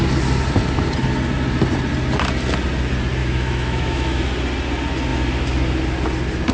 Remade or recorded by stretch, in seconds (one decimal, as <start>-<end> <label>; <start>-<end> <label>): 0.0-3.2 recorded; 3.2-4.2 remade; 4.2-6.5 recorded